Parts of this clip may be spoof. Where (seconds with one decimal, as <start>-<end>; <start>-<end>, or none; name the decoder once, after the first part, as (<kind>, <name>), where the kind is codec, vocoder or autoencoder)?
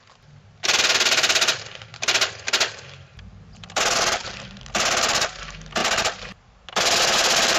none